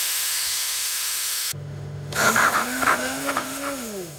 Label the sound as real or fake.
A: fake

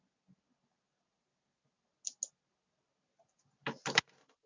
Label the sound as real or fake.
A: real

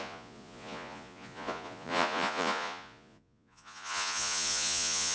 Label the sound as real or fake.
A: fake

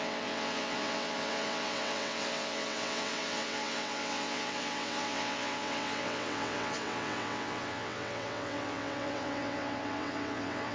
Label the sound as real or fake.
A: fake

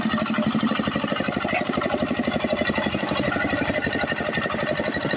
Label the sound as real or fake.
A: real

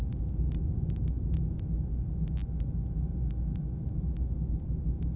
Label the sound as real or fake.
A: real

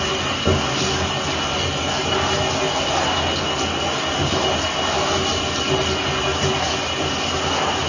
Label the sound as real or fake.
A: real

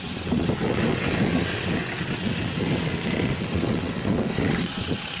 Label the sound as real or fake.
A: fake